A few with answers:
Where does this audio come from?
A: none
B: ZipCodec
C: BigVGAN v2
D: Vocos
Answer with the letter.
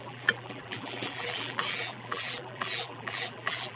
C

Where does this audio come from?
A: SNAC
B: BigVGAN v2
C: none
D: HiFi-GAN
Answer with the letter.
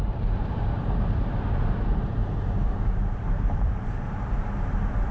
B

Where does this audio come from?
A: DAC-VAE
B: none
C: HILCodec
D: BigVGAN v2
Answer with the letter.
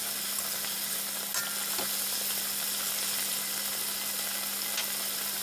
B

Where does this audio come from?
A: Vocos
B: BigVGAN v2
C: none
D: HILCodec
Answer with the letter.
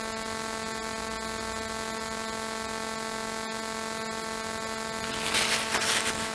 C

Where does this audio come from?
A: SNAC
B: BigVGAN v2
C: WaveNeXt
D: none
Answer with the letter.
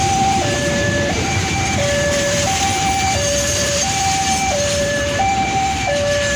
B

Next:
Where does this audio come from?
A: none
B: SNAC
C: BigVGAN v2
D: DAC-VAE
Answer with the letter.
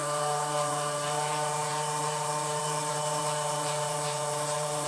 C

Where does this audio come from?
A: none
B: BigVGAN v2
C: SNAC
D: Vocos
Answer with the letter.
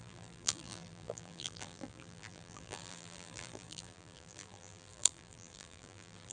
B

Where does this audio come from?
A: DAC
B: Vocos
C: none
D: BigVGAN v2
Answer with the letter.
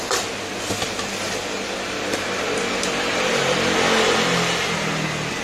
C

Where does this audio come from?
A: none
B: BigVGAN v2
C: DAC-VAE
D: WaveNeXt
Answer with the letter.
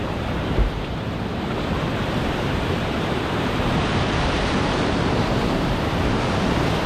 B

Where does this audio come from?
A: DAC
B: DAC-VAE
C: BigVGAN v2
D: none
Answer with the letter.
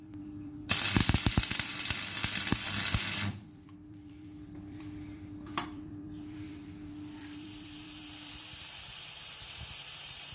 C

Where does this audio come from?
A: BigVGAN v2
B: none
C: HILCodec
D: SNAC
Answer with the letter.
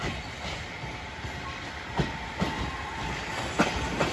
B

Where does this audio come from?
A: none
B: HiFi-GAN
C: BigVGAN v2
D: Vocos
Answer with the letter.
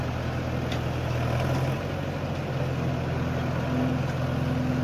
A